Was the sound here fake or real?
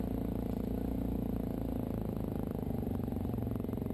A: real